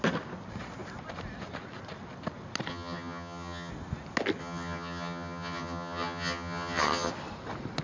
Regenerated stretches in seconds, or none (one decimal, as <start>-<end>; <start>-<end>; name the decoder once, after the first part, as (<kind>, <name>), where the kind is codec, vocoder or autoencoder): 2.7-3.7 (vocoder, HiFi-GAN); 4.4-7.1